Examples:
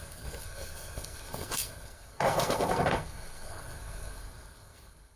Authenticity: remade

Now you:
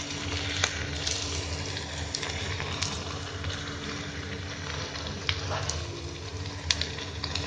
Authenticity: recorded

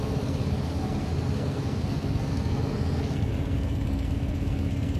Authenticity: remade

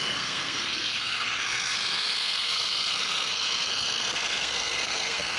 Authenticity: remade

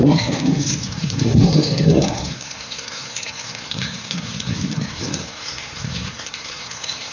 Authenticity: remade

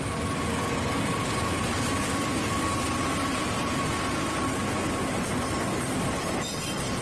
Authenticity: recorded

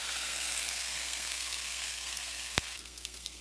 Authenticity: remade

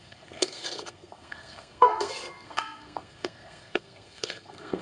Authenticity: remade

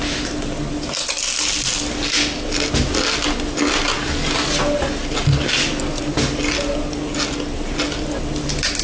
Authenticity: recorded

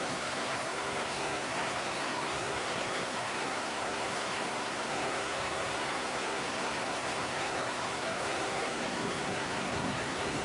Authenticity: remade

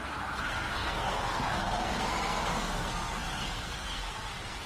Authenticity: remade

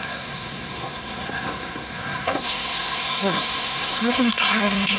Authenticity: remade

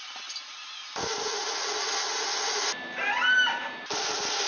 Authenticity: recorded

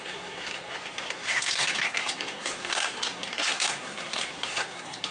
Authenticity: remade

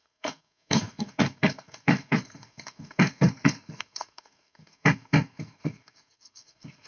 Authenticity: remade